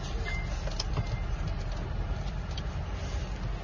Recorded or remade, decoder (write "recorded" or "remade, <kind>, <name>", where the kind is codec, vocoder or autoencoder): recorded